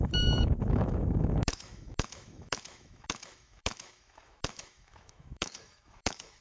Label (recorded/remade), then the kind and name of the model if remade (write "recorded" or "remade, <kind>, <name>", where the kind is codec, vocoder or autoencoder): remade, autoencoder, DAC-VAE